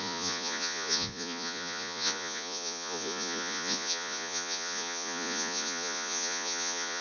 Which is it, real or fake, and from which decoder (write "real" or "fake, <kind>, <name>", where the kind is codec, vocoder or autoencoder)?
fake, vocoder, Vocos